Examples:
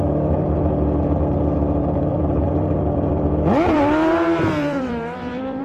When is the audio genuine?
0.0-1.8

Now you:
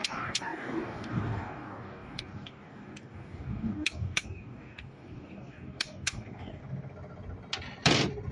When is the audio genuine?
6.6-8.3

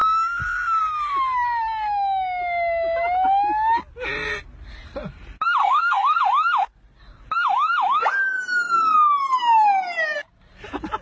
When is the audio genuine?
0.0-5.6; 6.2-11.0

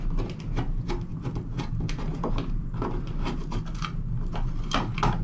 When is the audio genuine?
0.0-5.2